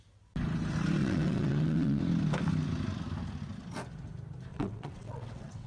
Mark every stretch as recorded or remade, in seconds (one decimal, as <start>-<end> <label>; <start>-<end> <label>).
0.0-1.0 recorded; 1.0-2.0 remade; 2.0-4.5 recorded; 4.5-5.7 remade